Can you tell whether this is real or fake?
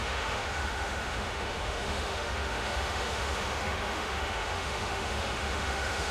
fake